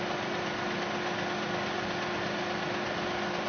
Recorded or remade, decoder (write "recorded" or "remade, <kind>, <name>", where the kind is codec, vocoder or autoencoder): recorded